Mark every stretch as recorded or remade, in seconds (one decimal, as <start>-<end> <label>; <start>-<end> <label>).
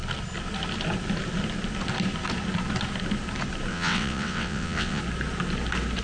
0.0-3.7 recorded; 3.7-5.0 remade; 5.0-6.0 recorded